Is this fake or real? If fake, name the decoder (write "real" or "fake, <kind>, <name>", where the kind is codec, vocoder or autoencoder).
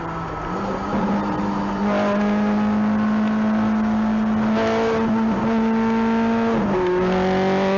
real